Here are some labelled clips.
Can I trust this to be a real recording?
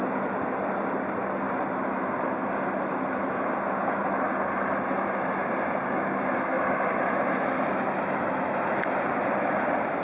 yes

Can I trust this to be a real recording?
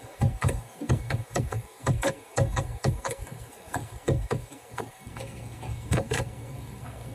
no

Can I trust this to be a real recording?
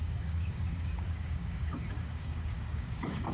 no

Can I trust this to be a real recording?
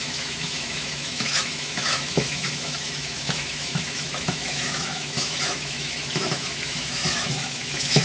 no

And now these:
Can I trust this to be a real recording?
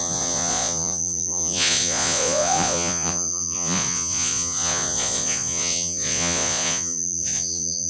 no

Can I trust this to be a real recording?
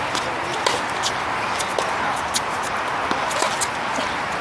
yes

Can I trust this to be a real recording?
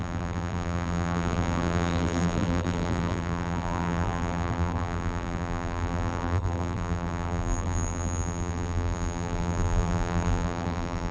no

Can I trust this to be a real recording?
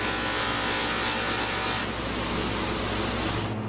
yes